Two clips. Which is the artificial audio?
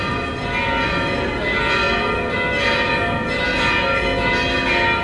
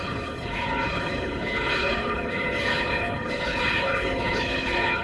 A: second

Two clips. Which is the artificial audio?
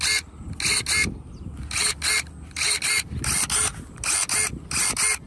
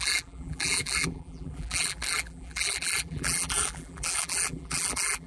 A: second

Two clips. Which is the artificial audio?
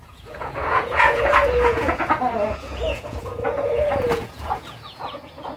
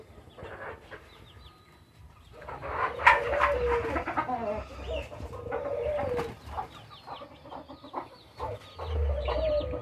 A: first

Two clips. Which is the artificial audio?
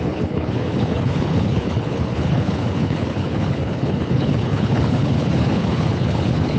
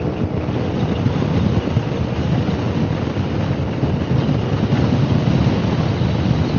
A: first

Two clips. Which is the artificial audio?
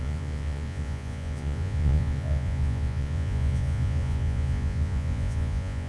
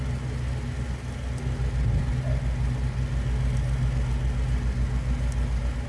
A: first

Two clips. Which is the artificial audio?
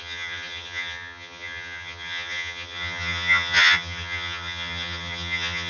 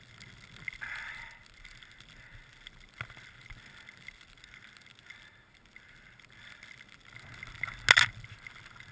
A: first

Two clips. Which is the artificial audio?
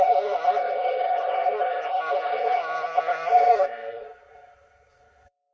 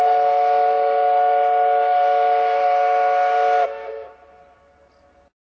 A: first